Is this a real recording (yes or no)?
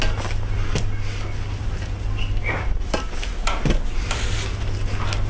yes